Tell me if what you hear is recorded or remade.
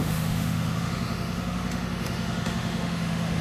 remade